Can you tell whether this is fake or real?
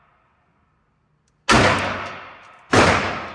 real